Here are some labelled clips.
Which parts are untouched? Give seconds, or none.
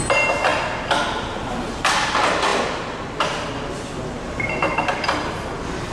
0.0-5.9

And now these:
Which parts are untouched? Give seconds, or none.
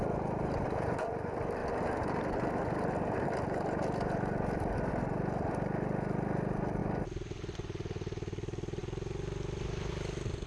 0.0-10.5